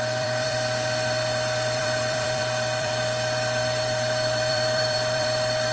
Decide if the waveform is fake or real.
fake